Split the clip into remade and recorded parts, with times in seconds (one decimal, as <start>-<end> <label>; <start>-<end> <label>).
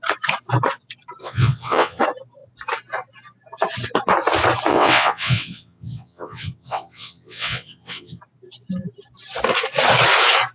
0.0-1.2 recorded; 1.2-2.0 remade; 2.0-4.7 recorded; 4.7-8.2 remade; 8.2-10.5 recorded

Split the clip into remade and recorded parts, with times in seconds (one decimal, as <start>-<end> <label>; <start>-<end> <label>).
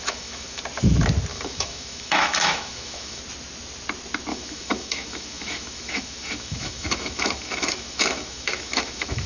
0.0-0.6 remade; 0.6-1.3 recorded; 1.3-3.2 remade; 3.2-4.3 recorded; 4.3-9.3 remade